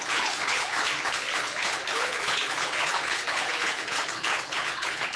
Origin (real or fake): fake